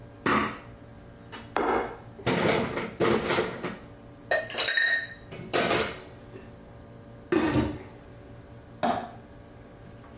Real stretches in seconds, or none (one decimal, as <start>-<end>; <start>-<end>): 0.0-10.2

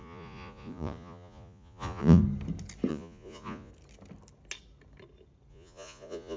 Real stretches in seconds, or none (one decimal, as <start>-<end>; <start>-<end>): 2.2-2.9; 3.7-5.5

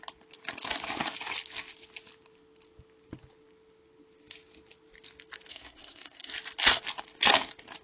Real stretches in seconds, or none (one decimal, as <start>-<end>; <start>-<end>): 0.0-5.5; 6.3-7.8

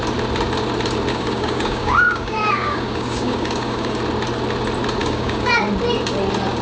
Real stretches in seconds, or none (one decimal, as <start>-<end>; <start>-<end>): 0.0-1.1; 4.0-5.0; 5.6-6.6

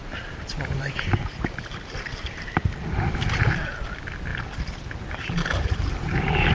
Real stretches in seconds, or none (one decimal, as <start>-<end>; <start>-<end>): 2.0-5.4

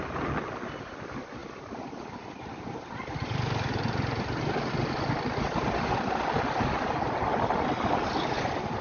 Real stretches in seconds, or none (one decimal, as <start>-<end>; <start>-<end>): 0.0-8.8

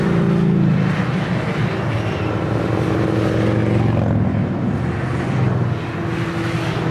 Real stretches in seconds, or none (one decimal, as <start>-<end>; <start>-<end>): 0.0-6.9